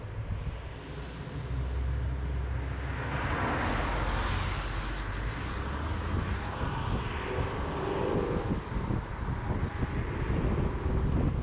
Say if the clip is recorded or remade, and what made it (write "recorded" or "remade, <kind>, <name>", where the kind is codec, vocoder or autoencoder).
recorded